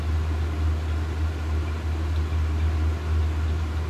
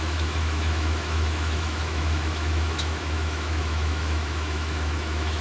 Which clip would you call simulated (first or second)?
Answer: second